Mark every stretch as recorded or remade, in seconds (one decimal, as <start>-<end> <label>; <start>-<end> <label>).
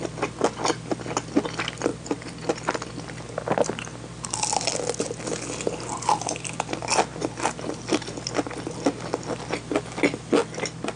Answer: 0.0-11.0 recorded